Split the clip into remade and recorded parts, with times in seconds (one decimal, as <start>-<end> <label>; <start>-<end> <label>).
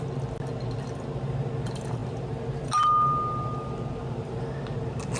0.0-5.2 recorded